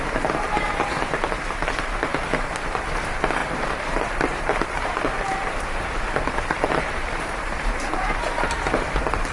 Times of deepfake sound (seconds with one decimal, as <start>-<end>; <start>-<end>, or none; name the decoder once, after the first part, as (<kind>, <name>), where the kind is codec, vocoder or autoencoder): 0.0-9.3 (vocoder, BigVGAN v2)

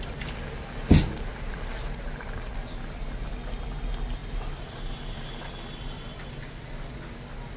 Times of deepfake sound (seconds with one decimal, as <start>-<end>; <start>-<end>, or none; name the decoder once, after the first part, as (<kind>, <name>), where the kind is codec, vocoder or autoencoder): 4.2-4.9 (vocoder, BigVGAN v2)

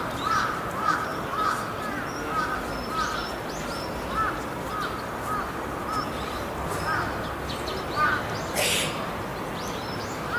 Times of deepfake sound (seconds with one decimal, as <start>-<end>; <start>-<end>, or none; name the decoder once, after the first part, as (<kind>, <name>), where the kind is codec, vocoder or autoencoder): none

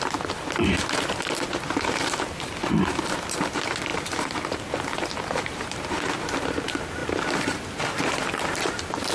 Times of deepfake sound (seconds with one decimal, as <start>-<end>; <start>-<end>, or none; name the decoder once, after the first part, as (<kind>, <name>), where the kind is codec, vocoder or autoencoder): 0.0-7.0 (vocoder, BigVGAN v2); 7.8-9.1

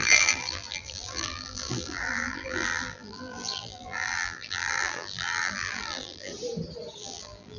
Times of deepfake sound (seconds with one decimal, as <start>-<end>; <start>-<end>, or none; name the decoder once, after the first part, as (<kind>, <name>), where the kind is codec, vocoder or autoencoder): 0.0-6.3 (vocoder, BigVGAN v2); 7.0-7.6

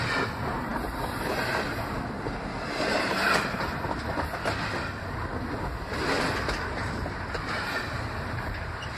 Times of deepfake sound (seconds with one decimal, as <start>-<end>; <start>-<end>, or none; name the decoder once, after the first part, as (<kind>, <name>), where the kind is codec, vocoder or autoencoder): none

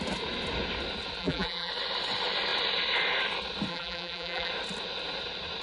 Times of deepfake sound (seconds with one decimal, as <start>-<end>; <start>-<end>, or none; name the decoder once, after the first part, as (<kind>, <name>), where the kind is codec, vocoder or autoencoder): 1.2-1.7 (vocoder, BigVGAN v2); 3.7-4.5

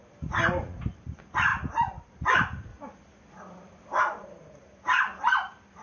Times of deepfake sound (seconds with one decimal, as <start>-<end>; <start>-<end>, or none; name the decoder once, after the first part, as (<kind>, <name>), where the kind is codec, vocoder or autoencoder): 0.6-1.5 (vocoder, BigVGAN v2); 2.1-2.7; 4.0-5.8